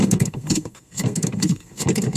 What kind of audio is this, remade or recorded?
remade